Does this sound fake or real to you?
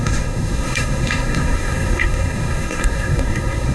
fake